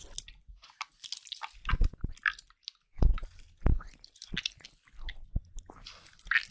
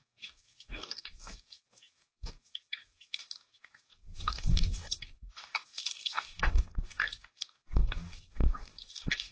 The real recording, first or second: first